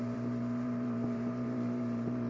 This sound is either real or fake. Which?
fake